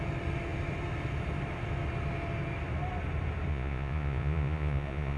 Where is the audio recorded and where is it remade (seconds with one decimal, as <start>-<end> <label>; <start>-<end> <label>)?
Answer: 0.0-3.5 recorded; 3.5-5.2 remade